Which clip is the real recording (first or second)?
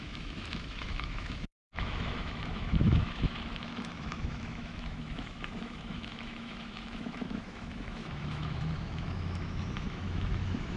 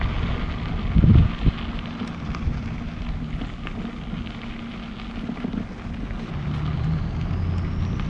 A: second